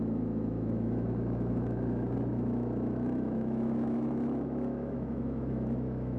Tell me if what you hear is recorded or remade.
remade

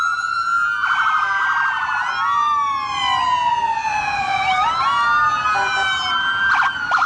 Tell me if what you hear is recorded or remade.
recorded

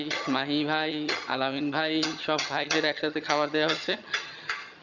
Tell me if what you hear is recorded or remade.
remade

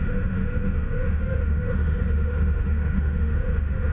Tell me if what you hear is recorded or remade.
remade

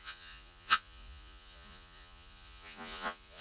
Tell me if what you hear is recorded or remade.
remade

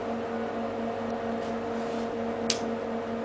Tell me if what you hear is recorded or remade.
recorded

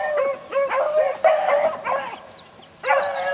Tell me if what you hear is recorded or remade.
recorded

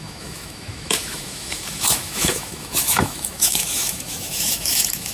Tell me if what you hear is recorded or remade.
remade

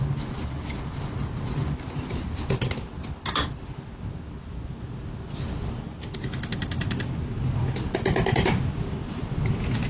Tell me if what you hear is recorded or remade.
recorded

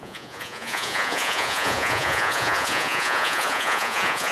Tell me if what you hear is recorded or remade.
remade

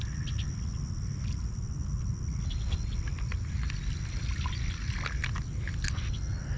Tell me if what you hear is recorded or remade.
recorded